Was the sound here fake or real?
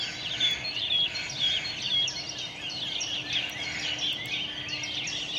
real